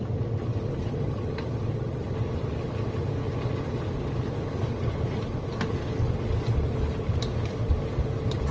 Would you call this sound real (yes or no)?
yes